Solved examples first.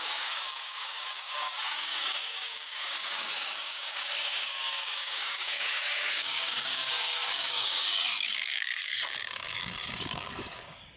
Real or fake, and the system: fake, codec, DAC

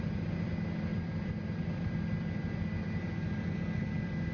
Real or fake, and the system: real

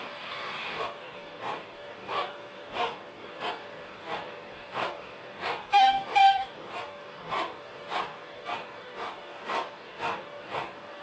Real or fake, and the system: fake, codec, DAC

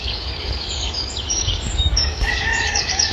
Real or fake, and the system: fake, codec, DAC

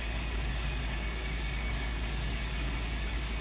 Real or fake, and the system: fake, codec, DAC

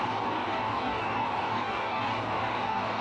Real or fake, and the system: fake, codec, DAC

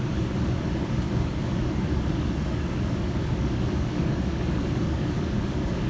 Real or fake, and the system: fake, codec, DAC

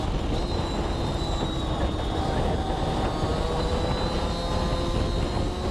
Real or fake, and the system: real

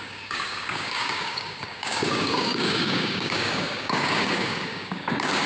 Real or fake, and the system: fake, codec, DAC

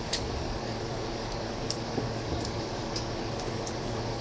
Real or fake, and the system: fake, codec, DAC